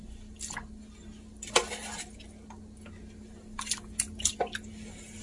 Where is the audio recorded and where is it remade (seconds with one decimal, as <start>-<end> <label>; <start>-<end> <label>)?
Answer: 0.0-5.2 recorded